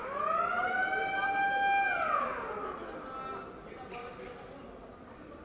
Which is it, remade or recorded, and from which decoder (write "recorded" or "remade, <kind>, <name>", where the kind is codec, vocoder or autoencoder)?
recorded